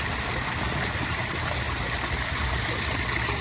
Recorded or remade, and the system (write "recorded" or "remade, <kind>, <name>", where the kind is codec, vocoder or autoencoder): recorded